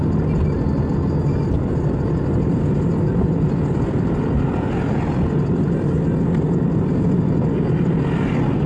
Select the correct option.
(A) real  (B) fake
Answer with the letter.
A